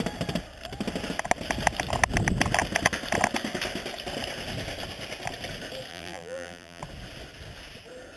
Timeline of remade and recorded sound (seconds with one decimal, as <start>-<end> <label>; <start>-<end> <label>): 0.0-5.9 recorded; 5.9-6.8 remade; 6.8-8.2 recorded